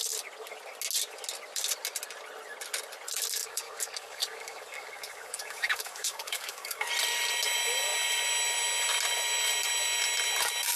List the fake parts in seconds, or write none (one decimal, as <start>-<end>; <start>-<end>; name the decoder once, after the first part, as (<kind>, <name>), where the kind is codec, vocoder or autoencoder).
3.4-6.9 (codec, DAC)